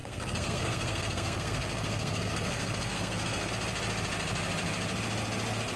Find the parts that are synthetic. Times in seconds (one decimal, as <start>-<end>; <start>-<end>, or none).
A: 0.0-3.5